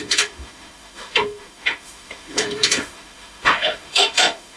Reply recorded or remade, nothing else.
remade